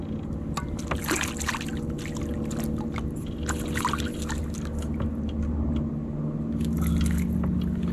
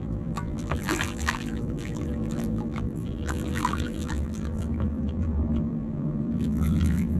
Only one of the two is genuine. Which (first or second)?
first